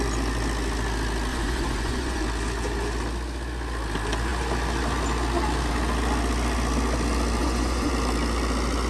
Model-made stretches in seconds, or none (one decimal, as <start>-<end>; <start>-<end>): 1.3-2.2; 7.4-7.9